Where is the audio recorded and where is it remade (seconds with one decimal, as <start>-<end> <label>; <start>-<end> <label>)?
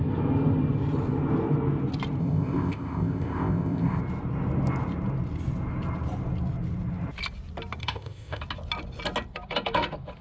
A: 0.0-2.2 recorded; 2.2-4.0 remade; 4.0-7.8 recorded; 7.8-8.4 remade; 8.4-10.2 recorded